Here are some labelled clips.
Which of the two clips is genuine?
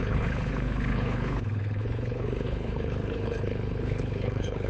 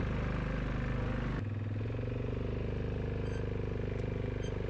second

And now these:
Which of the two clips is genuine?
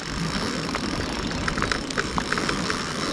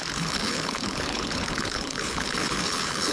first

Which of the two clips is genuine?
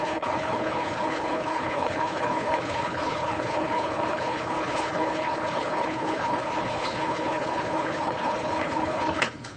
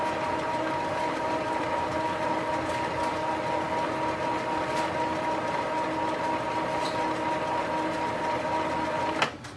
second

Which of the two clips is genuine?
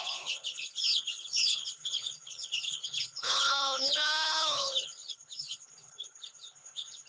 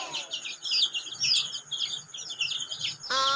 second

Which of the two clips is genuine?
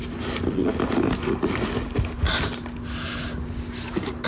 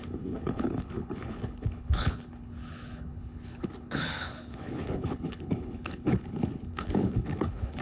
first